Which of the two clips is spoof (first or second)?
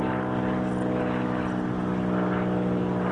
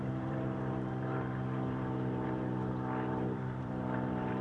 second